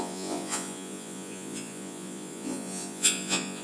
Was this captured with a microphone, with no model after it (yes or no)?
no